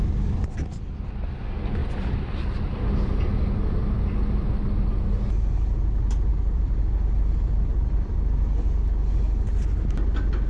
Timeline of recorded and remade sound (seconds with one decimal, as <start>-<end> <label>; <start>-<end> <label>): 0.0-1.8 recorded; 1.8-2.9 remade; 2.9-6.3 recorded; 6.3-8.2 remade; 8.2-10.5 recorded

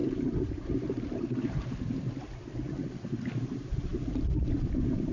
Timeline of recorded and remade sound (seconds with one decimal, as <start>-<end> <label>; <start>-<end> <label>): 0.0-2.1 remade; 2.1-5.1 recorded